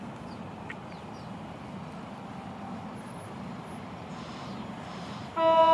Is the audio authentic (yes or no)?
yes